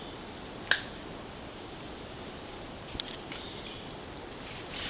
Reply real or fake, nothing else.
real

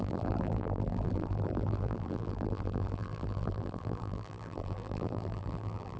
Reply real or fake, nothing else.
fake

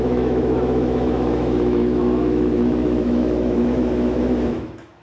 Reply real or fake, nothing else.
fake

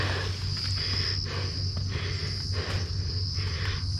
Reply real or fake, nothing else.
real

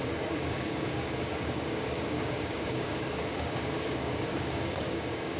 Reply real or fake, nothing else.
fake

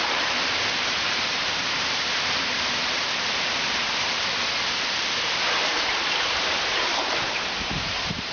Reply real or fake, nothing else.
fake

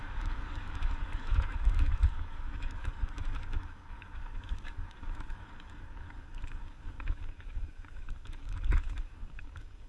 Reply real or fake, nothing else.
fake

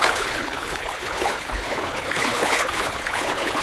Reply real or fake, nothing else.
fake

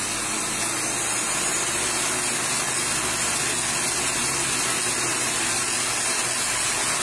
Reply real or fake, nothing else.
real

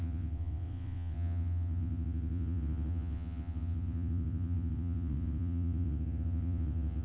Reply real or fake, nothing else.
fake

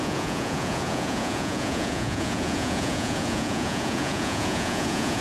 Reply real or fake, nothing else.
fake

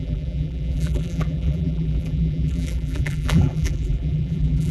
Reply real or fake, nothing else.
fake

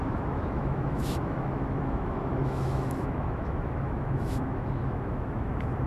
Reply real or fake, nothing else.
fake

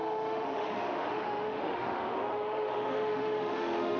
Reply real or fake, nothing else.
fake